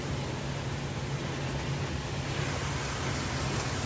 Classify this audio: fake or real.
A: real